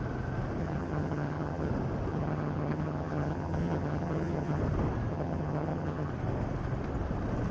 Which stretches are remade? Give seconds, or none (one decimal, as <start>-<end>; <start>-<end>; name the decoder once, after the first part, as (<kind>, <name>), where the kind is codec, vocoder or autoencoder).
0.6-1.7 (vocoder, HiFi-GAN); 2.1-4.6; 5.1-6.1

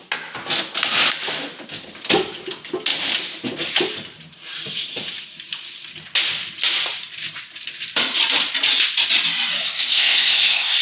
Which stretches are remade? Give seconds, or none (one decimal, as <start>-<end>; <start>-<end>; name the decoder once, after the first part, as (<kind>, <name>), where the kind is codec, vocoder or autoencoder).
9.6-10.8 (codec, ZipCodec)

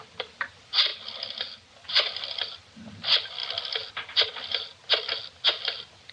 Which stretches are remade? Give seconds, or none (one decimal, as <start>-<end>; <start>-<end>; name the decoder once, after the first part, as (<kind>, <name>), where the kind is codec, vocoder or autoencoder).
0.0-3.4 (vocoder, BigVGAN v2); 3.9-4.7; 5.3-6.1

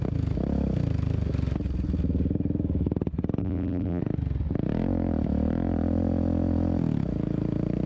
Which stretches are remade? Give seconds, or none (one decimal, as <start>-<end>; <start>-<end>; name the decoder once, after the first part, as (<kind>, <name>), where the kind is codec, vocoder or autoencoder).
3.4-4.0 (vocoder, BigVGAN v2)

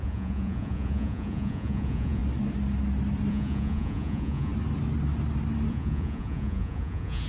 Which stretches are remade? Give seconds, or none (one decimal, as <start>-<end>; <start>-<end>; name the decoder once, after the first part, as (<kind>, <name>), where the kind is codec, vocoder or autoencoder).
0.0-2.2 (vocoder, Vocos); 3.3-4.5; 5.7-7.3

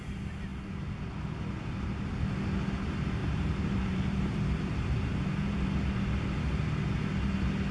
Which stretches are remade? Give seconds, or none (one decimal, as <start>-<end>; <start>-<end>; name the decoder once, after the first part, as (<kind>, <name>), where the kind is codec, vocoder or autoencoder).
3.2-5.9 (vocoder, BigVGAN v2)

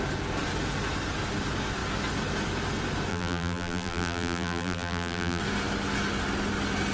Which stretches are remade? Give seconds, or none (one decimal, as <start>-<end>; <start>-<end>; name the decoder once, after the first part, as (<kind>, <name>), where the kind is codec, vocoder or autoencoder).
3.1-5.4 (vocoder, BigVGAN v2)

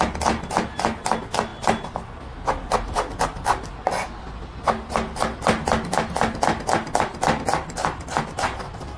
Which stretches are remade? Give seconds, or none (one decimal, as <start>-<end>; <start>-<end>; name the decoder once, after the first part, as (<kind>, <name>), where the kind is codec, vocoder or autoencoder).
none